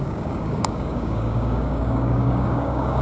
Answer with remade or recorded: remade